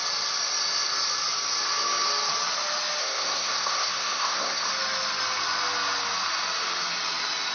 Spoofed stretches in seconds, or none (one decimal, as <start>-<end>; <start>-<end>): 3.0-4.7